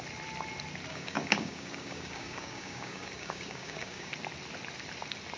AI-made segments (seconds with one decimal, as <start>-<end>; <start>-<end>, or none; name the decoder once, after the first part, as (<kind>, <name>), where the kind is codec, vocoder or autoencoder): 0.9-4.1 (codec, DAC)